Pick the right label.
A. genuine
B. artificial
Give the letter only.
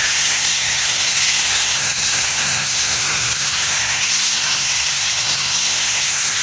B